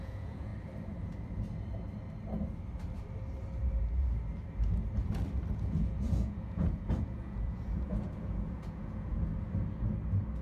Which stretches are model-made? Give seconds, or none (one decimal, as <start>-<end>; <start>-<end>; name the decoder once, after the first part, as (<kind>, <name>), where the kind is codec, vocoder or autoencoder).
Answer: 0.0-0.5 (vocoder, Vocos); 5.5-9.3